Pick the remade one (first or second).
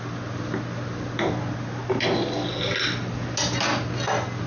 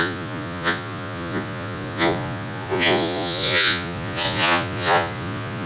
second